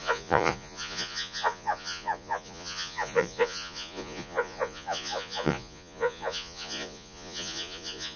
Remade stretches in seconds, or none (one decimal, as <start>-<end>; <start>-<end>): 0.0-8.2